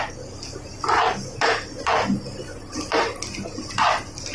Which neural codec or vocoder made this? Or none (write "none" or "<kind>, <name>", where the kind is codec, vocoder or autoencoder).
none